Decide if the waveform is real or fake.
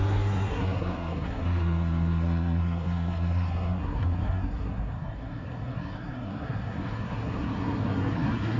fake